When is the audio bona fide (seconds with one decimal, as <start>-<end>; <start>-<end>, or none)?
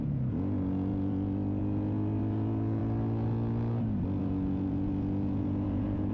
2.8-4.2